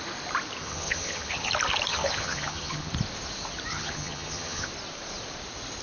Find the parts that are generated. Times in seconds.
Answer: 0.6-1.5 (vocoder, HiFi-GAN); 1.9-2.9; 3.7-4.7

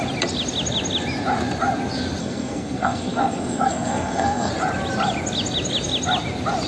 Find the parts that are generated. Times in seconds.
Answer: 2.2-4.5 (codec, SNAC)

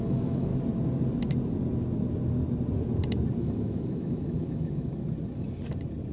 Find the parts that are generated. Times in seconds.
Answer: 0.0-0.5 (autoencoder, DAC-VAE); 3.4-4.9